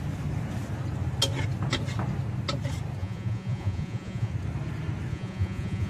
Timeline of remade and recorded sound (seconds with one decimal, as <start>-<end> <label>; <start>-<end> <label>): 0.0-3.0 recorded; 3.0-4.3 remade; 4.3-5.1 recorded; 5.1-5.9 remade